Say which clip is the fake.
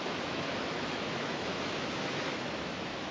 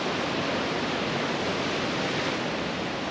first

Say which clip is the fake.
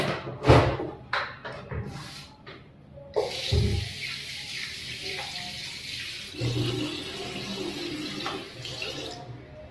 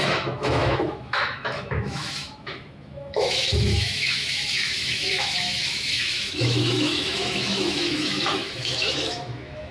second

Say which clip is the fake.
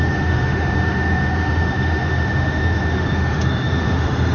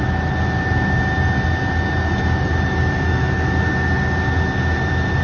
first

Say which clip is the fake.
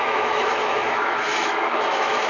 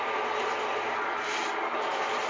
first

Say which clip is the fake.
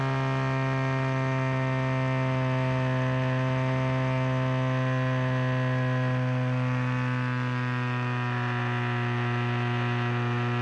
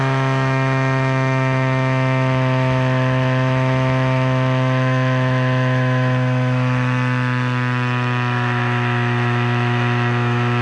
second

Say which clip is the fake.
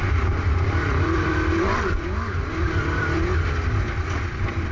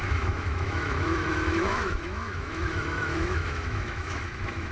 second